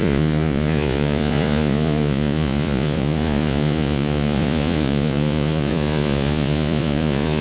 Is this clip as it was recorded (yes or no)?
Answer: no